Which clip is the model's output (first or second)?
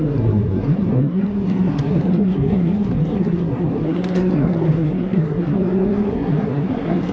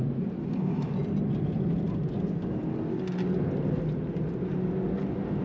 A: first